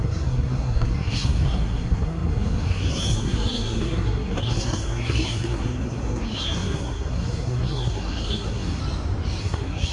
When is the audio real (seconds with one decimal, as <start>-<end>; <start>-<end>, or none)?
8.8-9.4